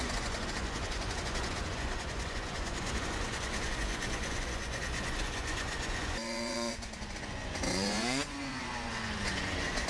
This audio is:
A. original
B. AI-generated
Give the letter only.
B